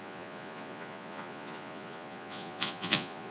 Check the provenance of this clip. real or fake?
fake